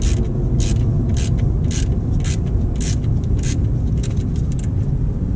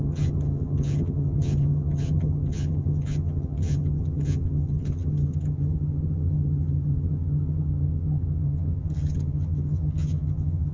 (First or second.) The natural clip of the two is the first